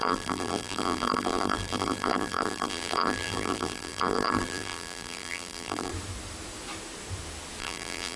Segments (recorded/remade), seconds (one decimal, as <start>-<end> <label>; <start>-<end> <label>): 0.0-5.9 remade; 5.9-7.6 recorded; 7.6-8.2 remade